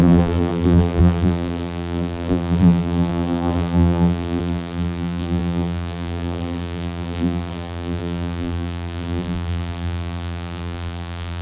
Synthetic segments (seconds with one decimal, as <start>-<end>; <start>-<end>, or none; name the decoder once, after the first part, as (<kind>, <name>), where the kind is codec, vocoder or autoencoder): 0.0-11.4 (vocoder, BigVGAN v2)